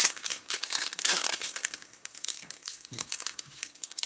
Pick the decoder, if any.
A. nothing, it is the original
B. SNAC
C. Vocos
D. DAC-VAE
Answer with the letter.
B